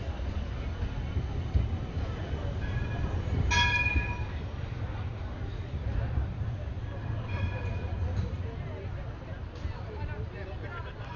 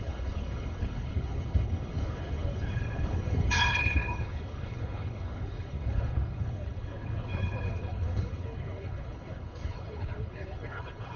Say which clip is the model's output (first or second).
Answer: second